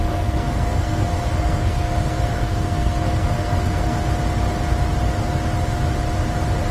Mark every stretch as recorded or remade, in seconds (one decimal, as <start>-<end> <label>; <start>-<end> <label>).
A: 0.0-4.0 remade; 4.0-6.7 recorded